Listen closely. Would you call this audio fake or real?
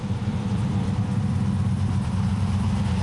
fake